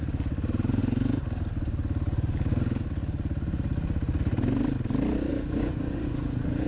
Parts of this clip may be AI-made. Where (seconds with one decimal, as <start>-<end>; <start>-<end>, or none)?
5.3-6.7